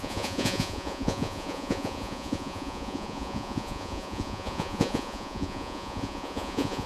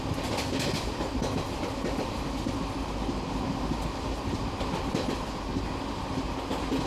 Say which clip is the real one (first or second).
second